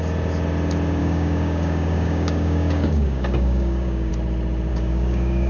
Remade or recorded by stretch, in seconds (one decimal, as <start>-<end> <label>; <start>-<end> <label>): 0.0-1.0 recorded; 1.0-4.1 remade; 4.1-4.7 recorded; 4.7-5.5 remade